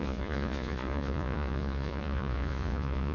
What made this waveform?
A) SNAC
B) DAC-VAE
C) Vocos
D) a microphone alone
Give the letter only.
C